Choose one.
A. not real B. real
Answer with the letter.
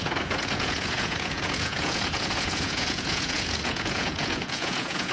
A